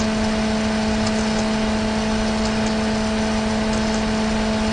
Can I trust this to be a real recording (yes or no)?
yes